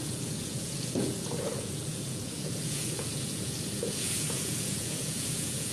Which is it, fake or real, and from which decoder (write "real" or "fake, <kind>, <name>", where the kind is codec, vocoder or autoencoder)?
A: fake, vocoder, Vocos